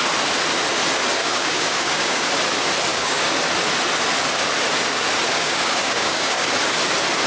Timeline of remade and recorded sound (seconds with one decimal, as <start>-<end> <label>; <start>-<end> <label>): 0.0-1.2 recorded; 1.2-2.3 remade; 2.3-2.9 recorded; 2.9-3.4 remade; 3.4-5.3 recorded; 5.3-6.5 remade; 6.5-7.3 recorded